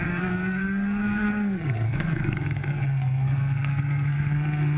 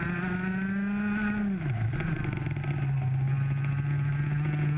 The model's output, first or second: first